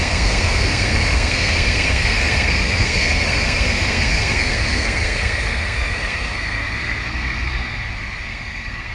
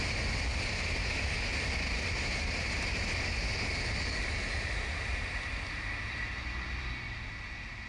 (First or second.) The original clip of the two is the second